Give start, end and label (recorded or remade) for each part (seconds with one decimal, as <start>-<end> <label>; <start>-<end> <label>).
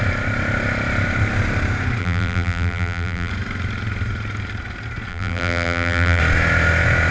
0.0-2.0 recorded; 2.0-3.3 remade; 3.3-5.1 recorded; 5.1-6.2 remade; 6.2-7.1 recorded